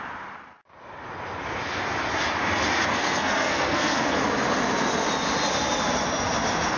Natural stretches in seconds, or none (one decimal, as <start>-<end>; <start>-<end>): 0.0-2.9; 4.2-6.8